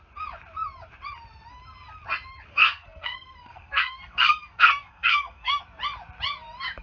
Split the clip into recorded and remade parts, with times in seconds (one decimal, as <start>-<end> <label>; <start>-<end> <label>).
0.0-2.5 recorded; 2.5-5.6 remade; 5.6-6.8 recorded